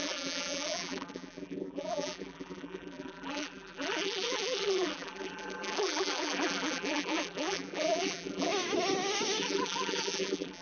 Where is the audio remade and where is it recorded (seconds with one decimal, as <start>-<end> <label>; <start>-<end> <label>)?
0.0-8.5 remade; 8.5-9.4 recorded; 9.4-10.6 remade